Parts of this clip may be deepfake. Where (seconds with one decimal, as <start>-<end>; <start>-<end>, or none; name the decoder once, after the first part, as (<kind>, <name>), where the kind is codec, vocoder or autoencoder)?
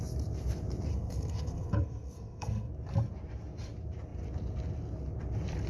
0.9-2.7 (codec, SNAC)